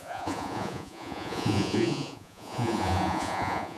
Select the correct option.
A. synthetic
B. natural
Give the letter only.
A